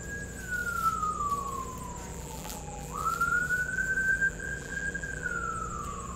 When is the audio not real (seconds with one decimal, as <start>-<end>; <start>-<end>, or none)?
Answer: 2.1-5.3